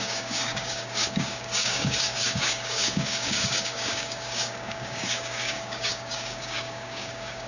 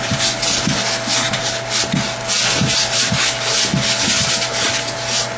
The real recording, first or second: second